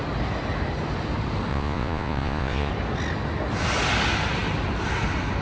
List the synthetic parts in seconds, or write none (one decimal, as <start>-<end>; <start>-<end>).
1.5-2.7